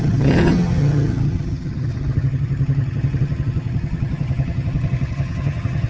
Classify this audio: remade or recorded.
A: remade